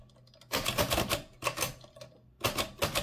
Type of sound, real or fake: real